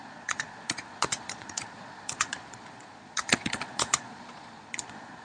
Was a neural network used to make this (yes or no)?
yes